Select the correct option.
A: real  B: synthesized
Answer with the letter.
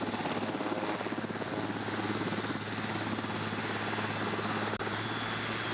A